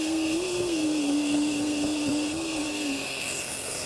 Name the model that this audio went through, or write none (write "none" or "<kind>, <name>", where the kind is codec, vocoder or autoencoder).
codec, SNAC